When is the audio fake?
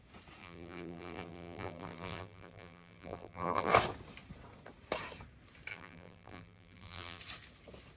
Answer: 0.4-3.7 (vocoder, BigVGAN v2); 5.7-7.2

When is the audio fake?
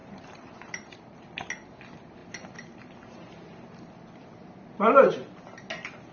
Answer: 0.0-1.3 (vocoder, BigVGAN v2)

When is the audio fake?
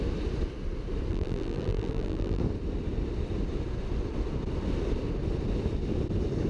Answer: 1.1-2.4 (vocoder, BigVGAN v2)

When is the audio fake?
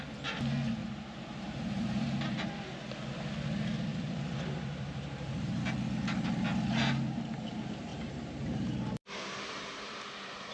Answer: 0.8-2.5 (vocoder, BigVGAN v2); 3.9-5.6; 7.9-10.5